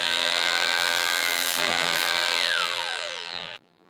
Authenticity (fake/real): fake